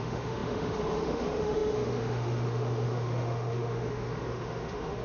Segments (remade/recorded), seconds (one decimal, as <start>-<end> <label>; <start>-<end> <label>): 0.0-5.0 remade